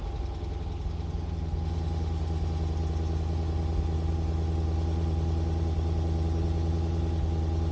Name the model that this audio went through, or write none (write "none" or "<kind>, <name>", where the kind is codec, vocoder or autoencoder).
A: none